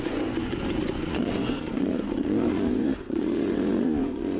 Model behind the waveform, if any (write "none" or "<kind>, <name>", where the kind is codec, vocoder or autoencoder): vocoder, Vocos